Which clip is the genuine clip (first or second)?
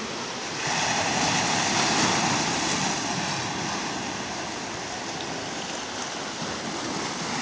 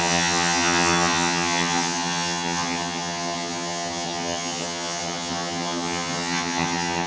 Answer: first